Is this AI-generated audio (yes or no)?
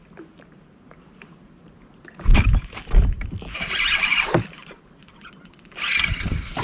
yes